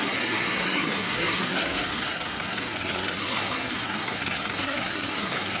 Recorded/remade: remade